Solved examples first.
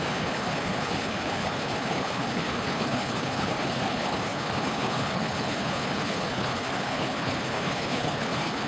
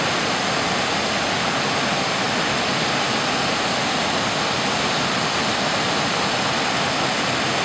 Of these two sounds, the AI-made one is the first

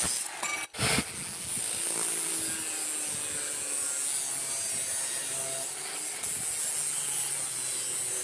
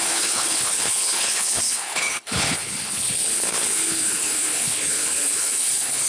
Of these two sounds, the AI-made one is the second